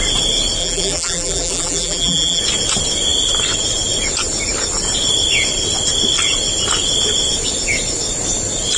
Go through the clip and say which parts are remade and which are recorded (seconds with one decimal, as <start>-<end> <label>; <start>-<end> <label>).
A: 0.0-0.6 recorded; 0.6-2.4 remade; 2.4-8.8 recorded